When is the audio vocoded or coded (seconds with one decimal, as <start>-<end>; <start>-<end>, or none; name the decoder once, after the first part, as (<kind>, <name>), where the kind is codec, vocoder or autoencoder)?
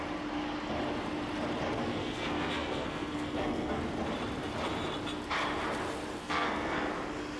1.8-3.8 (codec, SNAC); 6.2-6.9